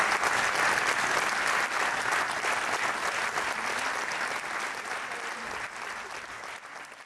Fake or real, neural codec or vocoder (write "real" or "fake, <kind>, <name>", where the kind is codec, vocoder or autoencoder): real